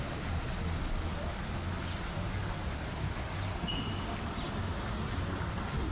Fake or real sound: real